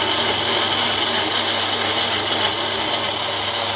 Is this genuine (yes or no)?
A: yes